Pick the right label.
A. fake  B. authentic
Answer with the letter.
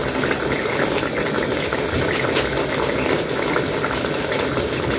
B